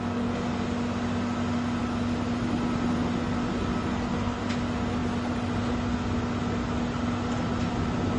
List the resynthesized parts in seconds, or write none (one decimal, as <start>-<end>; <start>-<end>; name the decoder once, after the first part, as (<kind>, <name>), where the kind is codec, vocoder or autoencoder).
3.9-4.4 (codec, SNAC)